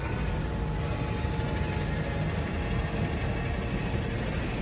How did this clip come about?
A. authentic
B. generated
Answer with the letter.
A